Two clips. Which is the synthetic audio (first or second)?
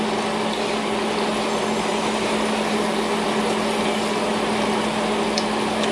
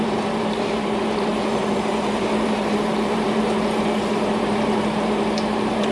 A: second